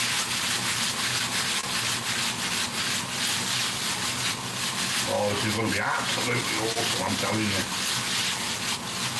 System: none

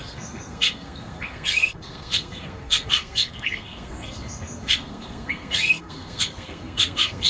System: codec, SNAC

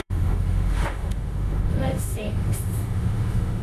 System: autoencoder, DAC-VAE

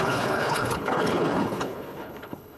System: codec, HILCodec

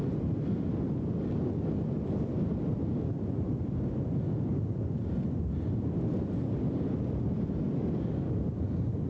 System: none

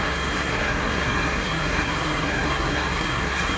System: codec, SNAC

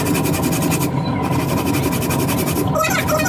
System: none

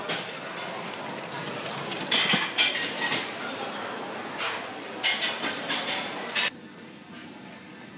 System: none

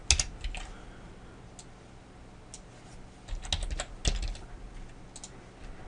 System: none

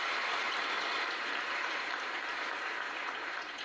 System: vocoder, BigVGAN v2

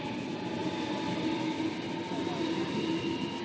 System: none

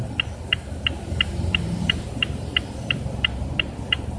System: vocoder, BigVGAN v2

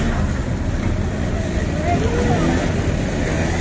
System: none